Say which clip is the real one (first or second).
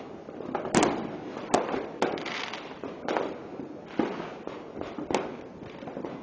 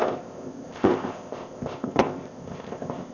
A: first